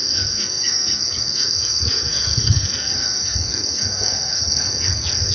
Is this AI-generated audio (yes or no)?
yes